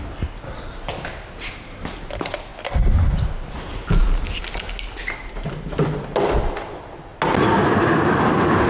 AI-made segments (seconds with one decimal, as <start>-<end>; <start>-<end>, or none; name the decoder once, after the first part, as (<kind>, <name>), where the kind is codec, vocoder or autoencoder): none